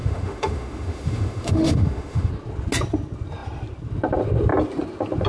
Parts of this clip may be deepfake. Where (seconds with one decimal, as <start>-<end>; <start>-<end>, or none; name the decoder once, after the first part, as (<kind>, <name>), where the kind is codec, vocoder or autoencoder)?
0.0-2.3 (autoencoder, DAC-VAE)